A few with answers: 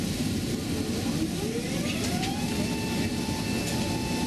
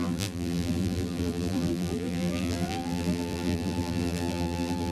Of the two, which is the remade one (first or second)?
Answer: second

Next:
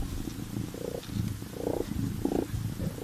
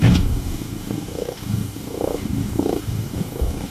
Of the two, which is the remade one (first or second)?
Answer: second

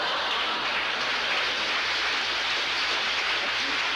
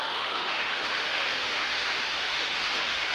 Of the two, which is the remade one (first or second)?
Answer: second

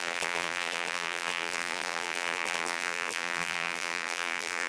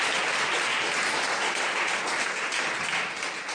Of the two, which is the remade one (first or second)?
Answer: first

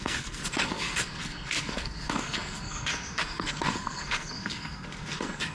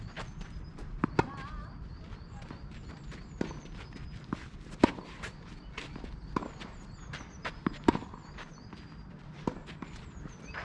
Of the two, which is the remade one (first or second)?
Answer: first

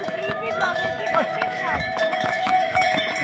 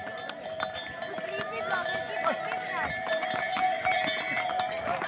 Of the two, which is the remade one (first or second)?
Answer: first